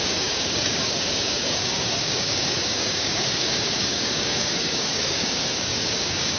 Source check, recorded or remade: remade